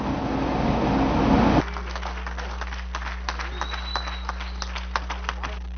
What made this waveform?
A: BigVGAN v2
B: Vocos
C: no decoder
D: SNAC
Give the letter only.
C